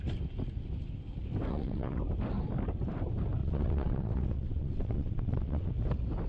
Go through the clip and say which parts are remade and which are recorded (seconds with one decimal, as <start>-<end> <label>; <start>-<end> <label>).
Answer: 0.0-1.5 recorded; 1.5-2.0 remade; 2.0-3.4 recorded; 3.4-5.7 remade; 5.7-6.3 recorded